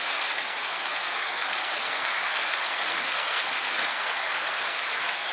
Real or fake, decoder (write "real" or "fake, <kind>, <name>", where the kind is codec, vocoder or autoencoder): fake, codec, SNAC